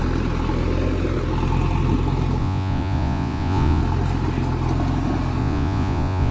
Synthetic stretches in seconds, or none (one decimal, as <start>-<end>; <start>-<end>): 2.4-3.8; 5.4-6.3